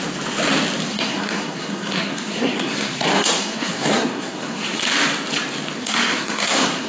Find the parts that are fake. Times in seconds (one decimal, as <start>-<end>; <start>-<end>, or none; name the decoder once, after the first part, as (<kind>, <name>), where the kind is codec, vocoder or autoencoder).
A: 0.9-4.8 (codec, SNAC); 5.8-6.9